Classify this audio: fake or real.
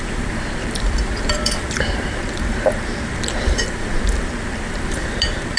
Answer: fake